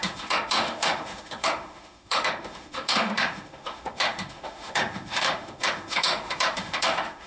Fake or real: fake